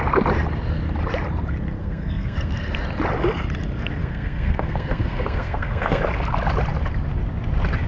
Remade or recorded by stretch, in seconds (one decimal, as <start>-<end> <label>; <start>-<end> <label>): 0.0-1.8 recorded; 1.8-2.7 remade; 2.7-4.0 recorded; 4.0-6.0 remade; 6.0-7.9 recorded